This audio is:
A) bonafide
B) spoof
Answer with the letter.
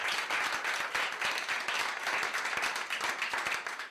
A